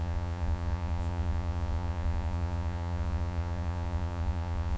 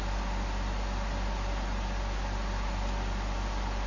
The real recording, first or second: second